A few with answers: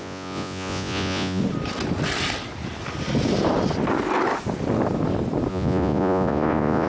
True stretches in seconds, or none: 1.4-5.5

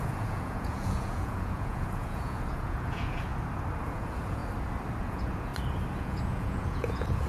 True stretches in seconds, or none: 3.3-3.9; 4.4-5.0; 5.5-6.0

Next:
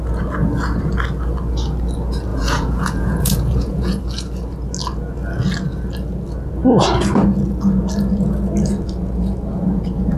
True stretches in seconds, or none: 0.0-2.3; 4.0-10.2

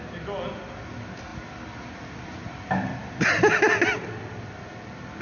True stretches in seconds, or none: 0.0-5.2